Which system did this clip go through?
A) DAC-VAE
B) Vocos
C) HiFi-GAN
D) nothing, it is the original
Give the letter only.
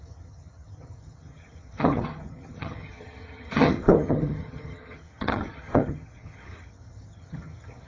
C